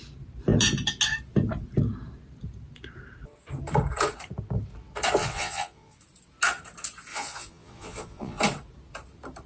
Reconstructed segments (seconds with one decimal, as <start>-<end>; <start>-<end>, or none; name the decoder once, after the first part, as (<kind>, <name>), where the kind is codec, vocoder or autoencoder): 5.2-6.0 (vocoder, Vocos); 7.1-8.4